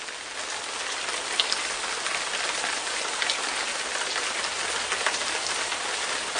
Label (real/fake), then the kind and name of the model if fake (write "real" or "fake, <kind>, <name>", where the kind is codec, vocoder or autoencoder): real